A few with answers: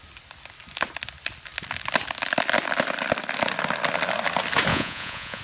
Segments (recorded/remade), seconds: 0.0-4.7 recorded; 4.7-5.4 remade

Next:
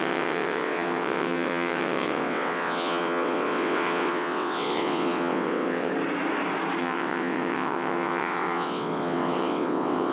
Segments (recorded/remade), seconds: 0.0-5.9 remade; 5.9-6.8 recorded; 6.8-10.1 remade

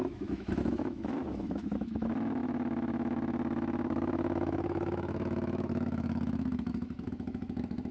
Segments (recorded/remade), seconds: 0.0-7.9 remade

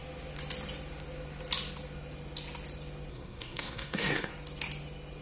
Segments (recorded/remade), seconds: 0.0-3.1 recorded; 3.1-4.3 remade; 4.3-5.2 recorded

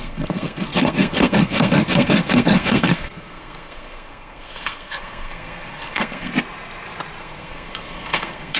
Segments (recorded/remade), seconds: 0.0-6.3 remade; 6.3-7.2 recorded; 7.2-8.6 remade

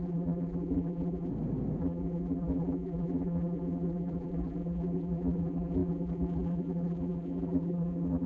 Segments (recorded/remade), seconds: 0.0-1.3 remade; 1.3-1.8 recorded; 1.8-8.3 remade

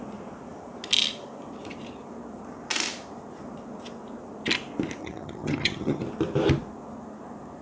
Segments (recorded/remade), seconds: 0.0-5.0 recorded; 5.0-6.0 remade; 6.0-7.6 recorded